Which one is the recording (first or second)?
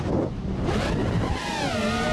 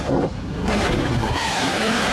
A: first